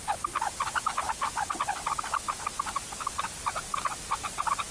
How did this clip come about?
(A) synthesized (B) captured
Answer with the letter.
B